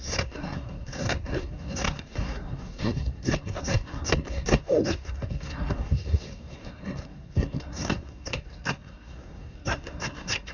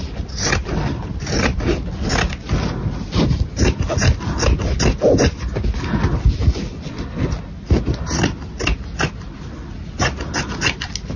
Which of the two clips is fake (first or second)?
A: first